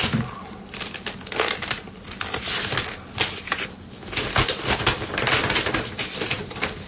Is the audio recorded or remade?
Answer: recorded